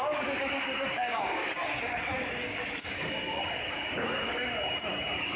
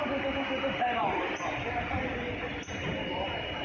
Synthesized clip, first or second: first